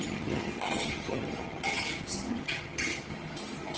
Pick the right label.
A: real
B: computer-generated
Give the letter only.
B